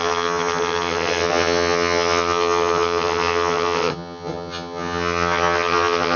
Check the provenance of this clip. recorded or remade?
remade